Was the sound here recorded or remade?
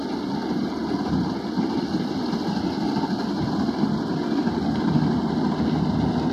recorded